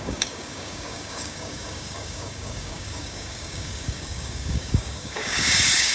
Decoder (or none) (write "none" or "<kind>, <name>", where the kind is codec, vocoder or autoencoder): codec, DAC